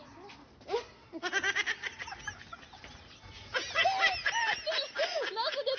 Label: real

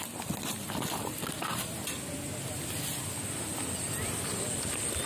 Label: real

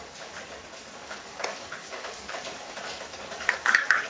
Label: fake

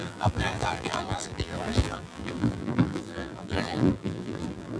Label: fake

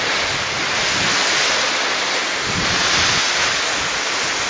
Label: real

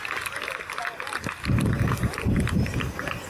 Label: real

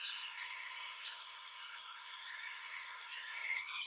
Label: fake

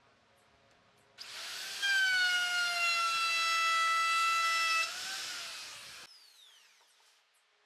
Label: real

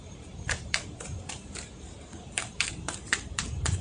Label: fake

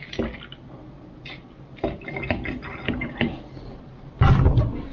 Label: real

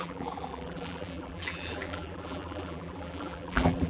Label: fake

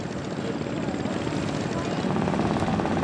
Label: real